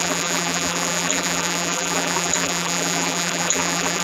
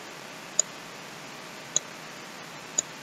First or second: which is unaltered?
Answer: second